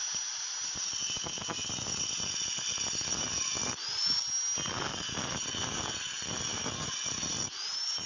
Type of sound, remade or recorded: recorded